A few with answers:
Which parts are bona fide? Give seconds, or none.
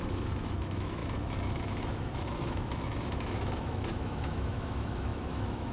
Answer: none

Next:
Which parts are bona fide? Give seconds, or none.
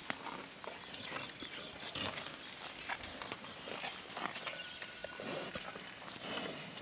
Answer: 0.0-6.8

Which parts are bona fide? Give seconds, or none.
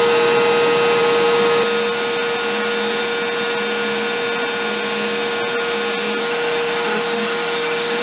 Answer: 0.0-6.2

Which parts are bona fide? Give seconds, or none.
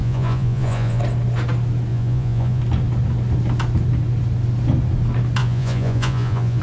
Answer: 1.0-1.9; 2.6-5.4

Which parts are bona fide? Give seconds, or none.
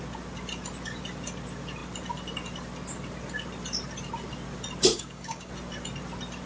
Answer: 0.0-4.9; 5.5-6.5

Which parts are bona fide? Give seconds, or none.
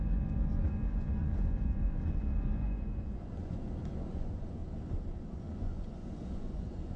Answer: 4.6-5.3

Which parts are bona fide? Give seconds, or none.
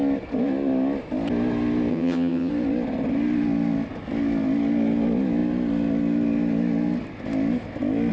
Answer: 0.0-1.9; 2.5-8.1